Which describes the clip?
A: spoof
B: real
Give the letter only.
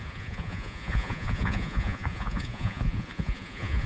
A